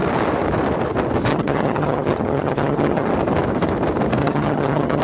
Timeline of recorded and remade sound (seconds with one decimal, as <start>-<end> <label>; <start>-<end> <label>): 0.0-1.3 recorded; 1.3-3.1 remade; 3.1-4.2 recorded; 4.2-5.0 remade